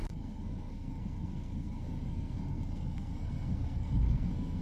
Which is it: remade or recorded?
remade